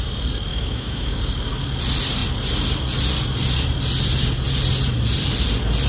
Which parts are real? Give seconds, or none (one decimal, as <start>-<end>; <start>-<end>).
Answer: 0.0-0.5; 1.1-5.9